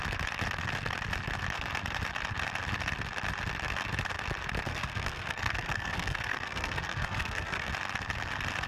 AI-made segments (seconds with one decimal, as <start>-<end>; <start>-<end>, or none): 4.7-7.7